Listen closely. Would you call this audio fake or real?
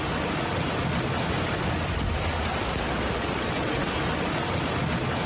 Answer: real